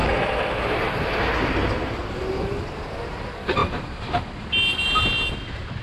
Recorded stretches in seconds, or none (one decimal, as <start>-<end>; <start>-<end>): 1.0-3.6; 4.4-5.8